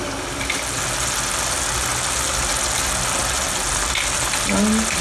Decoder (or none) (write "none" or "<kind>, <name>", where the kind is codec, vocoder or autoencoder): none